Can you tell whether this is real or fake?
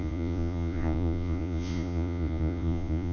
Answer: fake